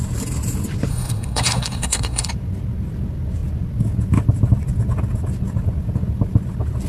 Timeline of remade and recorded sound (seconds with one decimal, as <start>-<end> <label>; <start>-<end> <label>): 0.0-0.9 recorded; 0.9-2.3 remade; 2.3-6.9 recorded

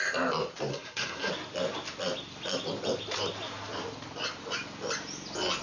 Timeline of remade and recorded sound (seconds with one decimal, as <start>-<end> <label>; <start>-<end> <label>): 0.0-0.7 recorded; 0.7-1.3 remade; 1.3-5.6 recorded

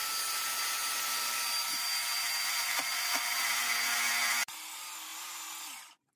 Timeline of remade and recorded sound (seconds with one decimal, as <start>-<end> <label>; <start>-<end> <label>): 0.0-6.2 recorded

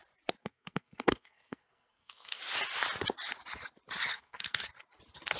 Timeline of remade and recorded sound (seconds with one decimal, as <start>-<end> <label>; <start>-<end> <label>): 0.0-0.4 recorded; 0.4-2.4 remade; 2.4-4.1 recorded; 4.1-4.7 remade; 4.7-5.4 recorded

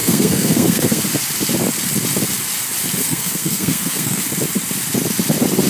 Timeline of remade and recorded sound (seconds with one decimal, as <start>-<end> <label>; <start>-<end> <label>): 0.0-1.0 remade; 1.0-3.0 recorded; 3.0-4.2 remade; 4.2-5.7 recorded

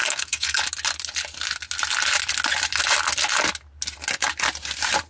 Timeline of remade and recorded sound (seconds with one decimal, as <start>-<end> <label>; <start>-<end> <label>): 0.0-0.6 remade; 0.6-5.1 recorded

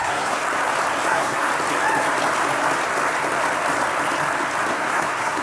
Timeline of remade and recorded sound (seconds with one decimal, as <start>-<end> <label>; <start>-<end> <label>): 0.0-0.4 remade; 0.4-1.1 recorded; 1.1-1.5 remade; 1.5-4.7 recorded; 4.7-5.4 remade

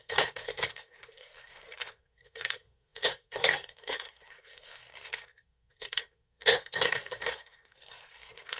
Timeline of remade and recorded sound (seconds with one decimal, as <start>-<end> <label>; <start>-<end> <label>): 0.0-8.6 remade